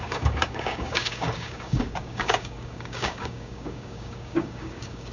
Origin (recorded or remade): remade